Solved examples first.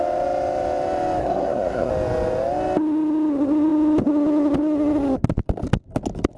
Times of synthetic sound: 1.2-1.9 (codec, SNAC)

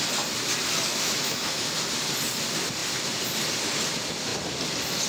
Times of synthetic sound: 0.9-1.6 (autoencoder, DAC-VAE)

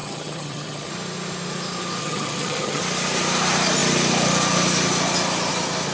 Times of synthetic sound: 0.0-0.9 (vocoder, HiFi-GAN); 2.0-2.8

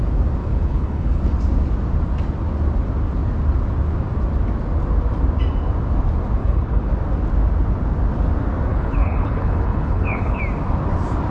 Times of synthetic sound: 0.4-1.2 (codec, HILCodec); 6.4-6.9; 8.7-10.4

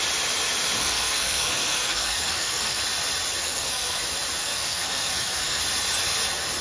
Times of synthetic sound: 0.8-2.8 (codec, SNAC); 3.4-4.0; 4.4-5.6

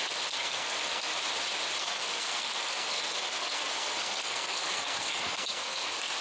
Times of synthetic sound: 0.0-1.1 (codec, SNAC); 1.8-6.2

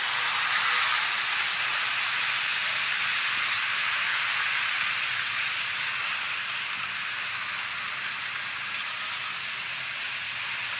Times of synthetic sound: 1.7-5.1 (vocoder, BigVGAN v2)

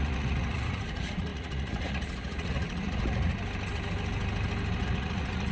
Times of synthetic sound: 0.0-3.3 (vocoder, Vocos); 4.8-5.5